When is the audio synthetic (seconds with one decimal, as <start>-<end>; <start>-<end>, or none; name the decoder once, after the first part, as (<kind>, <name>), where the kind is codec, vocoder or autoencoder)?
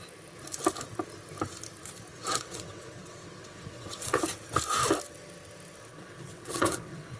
2.1-4.2 (vocoder, WaveNeXt); 5.9-7.2